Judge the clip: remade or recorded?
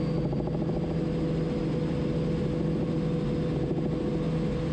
recorded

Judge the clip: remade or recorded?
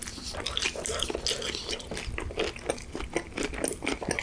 recorded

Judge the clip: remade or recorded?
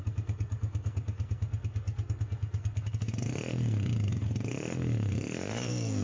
remade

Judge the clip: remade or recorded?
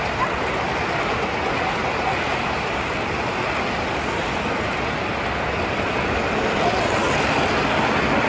recorded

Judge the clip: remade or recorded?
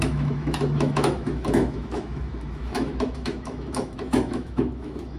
remade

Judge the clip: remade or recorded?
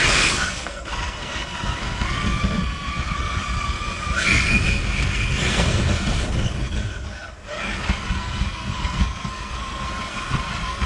remade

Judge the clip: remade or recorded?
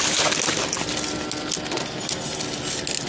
recorded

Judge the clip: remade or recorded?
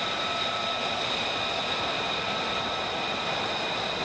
recorded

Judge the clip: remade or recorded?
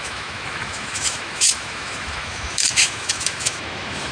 remade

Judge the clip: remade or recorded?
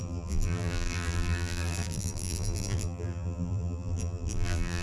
remade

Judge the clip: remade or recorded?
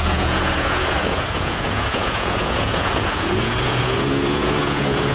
remade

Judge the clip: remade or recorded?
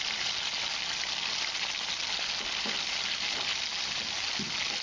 recorded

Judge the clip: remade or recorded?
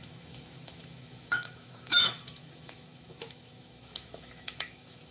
remade